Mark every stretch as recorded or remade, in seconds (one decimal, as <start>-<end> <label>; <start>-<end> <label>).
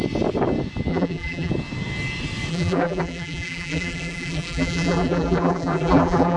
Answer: 0.0-0.9 recorded; 0.9-1.5 remade; 1.5-2.5 recorded; 2.5-6.4 remade